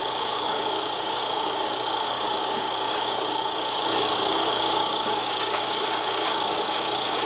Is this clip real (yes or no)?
no